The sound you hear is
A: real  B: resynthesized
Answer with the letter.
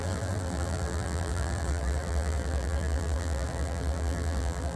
B